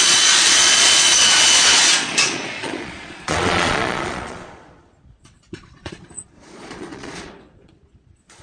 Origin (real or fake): fake